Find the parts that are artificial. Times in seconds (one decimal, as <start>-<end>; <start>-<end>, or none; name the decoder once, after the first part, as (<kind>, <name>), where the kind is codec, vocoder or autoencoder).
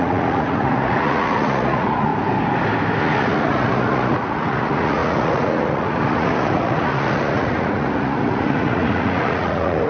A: 0.0-2.1 (vocoder, Vocos); 3.0-9.9